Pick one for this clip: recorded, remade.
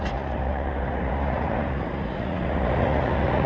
remade